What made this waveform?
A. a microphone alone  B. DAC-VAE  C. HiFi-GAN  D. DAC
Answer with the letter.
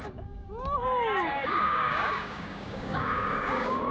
D